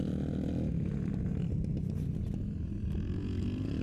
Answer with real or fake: real